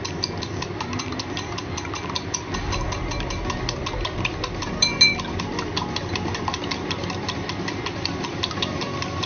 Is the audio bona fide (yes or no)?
no